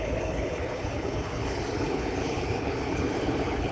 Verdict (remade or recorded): remade